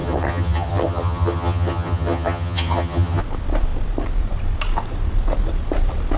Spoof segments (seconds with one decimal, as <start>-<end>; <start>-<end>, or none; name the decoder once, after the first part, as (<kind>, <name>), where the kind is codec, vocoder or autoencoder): 0.0-3.2 (vocoder, HiFi-GAN)